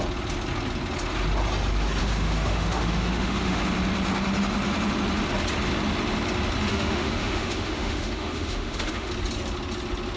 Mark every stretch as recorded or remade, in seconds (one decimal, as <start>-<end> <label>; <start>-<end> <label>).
0.0-2.0 recorded; 2.0-3.6 remade; 3.6-6.7 recorded; 6.7-9.1 remade; 9.1-10.2 recorded